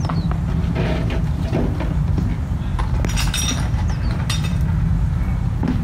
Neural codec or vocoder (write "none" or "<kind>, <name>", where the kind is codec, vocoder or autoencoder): none